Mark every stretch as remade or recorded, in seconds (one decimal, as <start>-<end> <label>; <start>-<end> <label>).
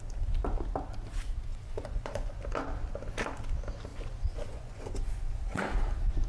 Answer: 0.0-1.5 recorded; 1.5-2.4 remade; 2.4-3.9 recorded; 3.9-5.7 remade; 5.7-6.3 recorded